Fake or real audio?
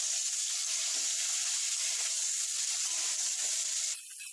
real